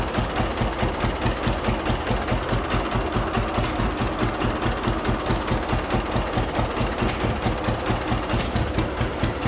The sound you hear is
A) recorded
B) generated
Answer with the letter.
A